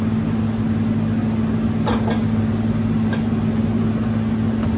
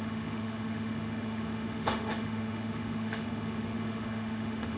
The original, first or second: first